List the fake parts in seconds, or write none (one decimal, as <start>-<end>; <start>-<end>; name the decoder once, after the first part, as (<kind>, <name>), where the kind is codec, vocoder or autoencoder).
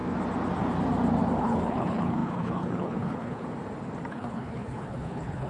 1.4-3.4 (codec, HILCodec); 4.1-5.5